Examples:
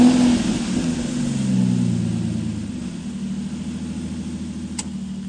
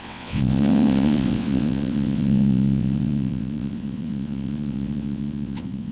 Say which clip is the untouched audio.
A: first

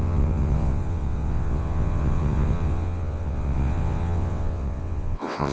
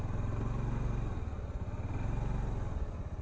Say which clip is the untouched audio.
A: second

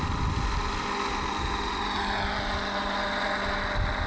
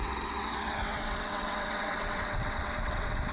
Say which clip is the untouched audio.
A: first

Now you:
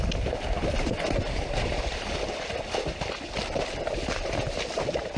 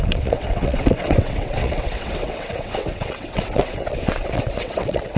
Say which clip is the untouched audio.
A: first